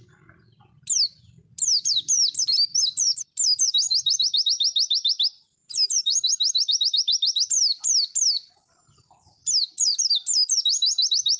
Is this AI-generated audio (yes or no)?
no